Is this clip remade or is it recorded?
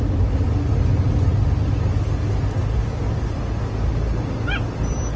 recorded